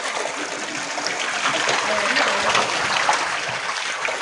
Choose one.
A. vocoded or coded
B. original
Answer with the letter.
B